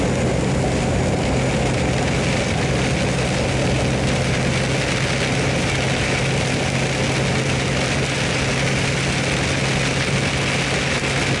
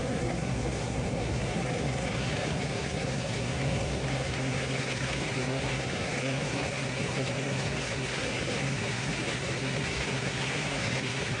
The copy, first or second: second